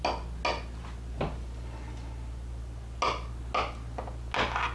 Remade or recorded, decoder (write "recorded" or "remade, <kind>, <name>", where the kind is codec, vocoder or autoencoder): recorded